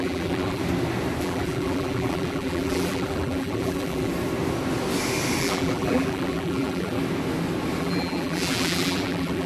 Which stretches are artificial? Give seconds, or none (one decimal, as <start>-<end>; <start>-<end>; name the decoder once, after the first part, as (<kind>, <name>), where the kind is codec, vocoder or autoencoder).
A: 0.0-0.6 (vocoder, BigVGAN v2); 1.2-4.1; 5.4-7.0; 7.8-9.5